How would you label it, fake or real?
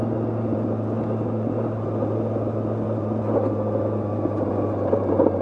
real